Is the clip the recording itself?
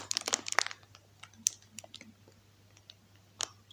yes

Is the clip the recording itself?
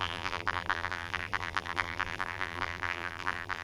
no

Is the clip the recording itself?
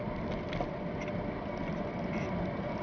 no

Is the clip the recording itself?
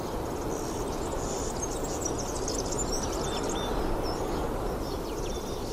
yes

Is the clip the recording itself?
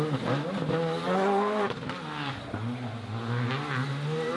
yes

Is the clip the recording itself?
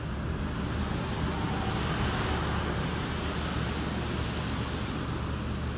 yes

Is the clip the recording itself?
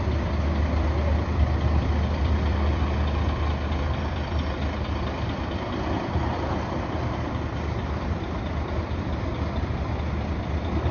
no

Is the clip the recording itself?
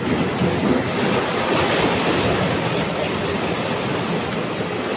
yes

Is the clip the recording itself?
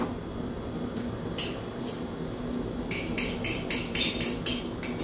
yes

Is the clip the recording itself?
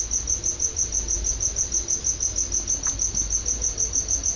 yes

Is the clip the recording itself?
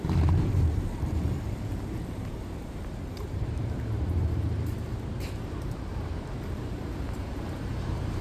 no